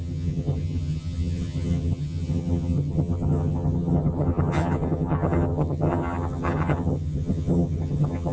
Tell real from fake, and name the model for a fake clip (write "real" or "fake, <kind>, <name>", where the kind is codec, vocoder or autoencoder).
fake, vocoder, HiFi-GAN